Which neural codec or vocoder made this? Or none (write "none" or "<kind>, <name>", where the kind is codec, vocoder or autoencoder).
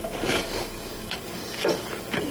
codec, DAC